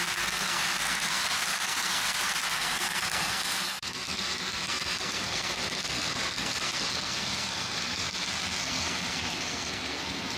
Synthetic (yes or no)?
yes